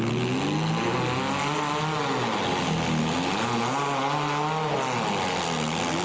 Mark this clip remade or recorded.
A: recorded